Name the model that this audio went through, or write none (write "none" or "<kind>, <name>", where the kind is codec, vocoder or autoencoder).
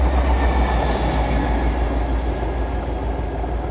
none